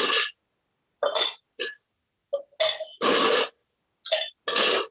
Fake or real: real